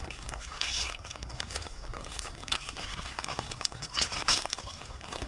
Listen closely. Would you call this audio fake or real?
fake